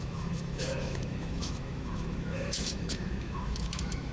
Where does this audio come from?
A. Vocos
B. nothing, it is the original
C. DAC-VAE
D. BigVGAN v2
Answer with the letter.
C